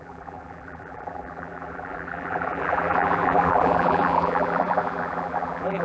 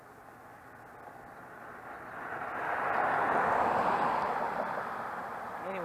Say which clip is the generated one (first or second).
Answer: first